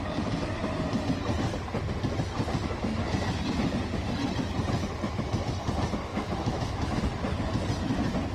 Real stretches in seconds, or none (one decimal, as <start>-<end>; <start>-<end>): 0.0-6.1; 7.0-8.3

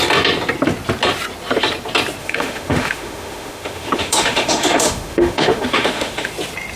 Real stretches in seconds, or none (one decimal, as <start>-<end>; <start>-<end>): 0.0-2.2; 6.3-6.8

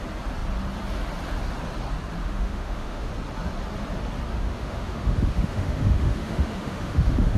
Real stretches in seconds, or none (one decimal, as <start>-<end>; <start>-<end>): 0.0-2.2; 3.1-4.3

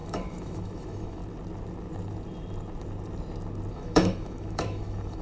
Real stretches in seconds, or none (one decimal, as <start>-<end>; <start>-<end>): 1.2-3.7

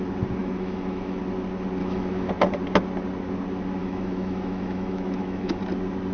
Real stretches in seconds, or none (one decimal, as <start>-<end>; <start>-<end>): 0.0-0.4; 1.2-1.8; 2.3-3.8; 5.6-6.1

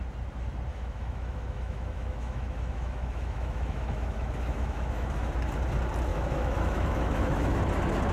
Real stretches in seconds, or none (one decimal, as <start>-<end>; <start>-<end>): 0.0-0.7; 5.3-6.1; 7.6-8.1